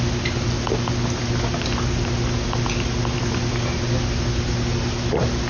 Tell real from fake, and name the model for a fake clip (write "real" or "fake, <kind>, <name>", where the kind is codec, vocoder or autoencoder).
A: real